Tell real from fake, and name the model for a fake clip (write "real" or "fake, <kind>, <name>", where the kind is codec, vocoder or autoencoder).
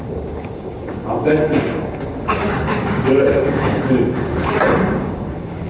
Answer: fake, codec, DAC